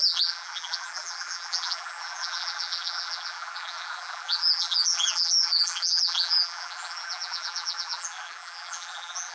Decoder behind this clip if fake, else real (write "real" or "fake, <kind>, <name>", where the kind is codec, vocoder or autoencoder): fake, vocoder, BigVGAN v2